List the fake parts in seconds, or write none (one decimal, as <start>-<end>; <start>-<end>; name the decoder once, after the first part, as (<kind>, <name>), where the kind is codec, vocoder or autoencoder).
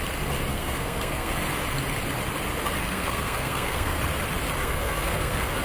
0.5-1.3 (codec, SNAC); 2.8-4.0; 4.6-5.6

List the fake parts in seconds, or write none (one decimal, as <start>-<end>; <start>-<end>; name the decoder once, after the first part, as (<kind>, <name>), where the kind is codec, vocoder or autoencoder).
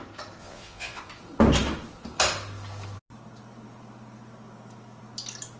0.4-1.0 (vocoder, Vocos)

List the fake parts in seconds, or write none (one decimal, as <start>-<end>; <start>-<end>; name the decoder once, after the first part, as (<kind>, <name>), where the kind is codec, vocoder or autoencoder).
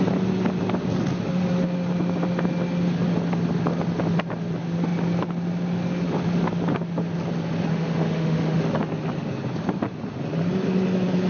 7.7-8.6 (autoencoder, DAC-VAE)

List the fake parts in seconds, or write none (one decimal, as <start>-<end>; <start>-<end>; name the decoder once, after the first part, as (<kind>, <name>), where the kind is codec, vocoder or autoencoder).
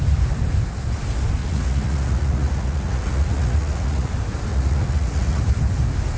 1.4-4.1 (vocoder, Vocos); 4.5-5.4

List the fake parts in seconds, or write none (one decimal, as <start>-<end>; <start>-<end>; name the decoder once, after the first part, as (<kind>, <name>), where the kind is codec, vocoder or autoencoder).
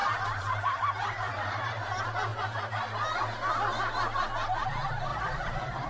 0.0-1.7 (vocoder, BigVGAN v2); 5.1-5.9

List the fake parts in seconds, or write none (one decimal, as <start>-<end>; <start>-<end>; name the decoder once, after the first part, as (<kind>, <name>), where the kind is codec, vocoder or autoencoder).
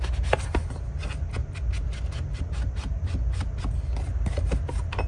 none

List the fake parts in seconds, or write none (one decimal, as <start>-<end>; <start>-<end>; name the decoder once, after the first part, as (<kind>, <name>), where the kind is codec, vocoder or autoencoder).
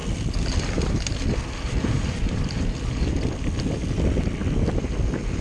none